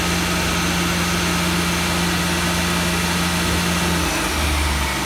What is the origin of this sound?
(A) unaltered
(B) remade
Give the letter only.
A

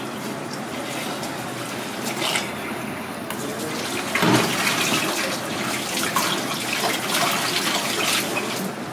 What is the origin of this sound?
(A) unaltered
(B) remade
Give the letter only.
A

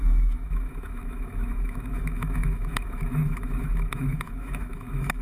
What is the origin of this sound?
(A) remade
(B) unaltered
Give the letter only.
A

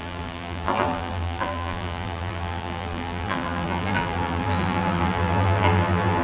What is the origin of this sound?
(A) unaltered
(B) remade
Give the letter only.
B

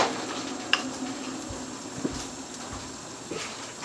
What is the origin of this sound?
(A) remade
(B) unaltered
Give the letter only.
B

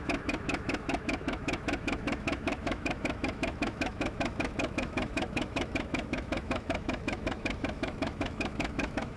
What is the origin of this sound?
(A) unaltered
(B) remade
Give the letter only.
B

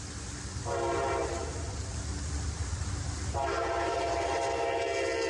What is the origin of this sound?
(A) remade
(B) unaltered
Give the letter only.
B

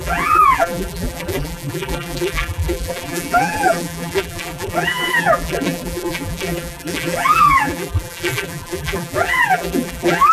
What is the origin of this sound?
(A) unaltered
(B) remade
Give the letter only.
B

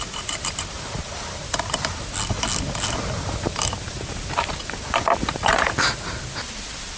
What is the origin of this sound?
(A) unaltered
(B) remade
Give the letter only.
A